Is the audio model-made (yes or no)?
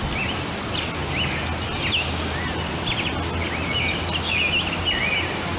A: no